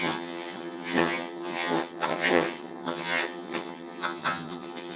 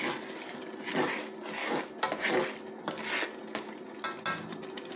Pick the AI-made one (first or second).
first